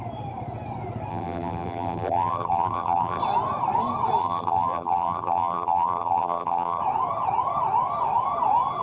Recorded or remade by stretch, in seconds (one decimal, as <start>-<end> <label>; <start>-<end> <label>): 0.0-1.1 recorded; 1.1-3.2 remade; 3.2-4.2 recorded; 4.2-6.8 remade; 6.8-8.8 recorded